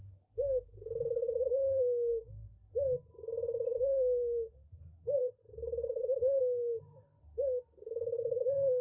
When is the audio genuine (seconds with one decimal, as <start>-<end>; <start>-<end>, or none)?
0.0-5.2; 6.4-8.8